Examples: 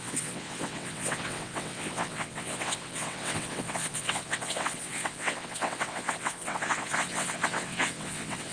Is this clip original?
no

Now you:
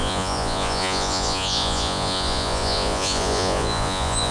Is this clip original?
no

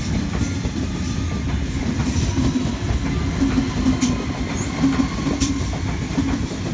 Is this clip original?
yes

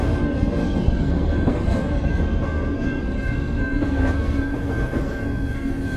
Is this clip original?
no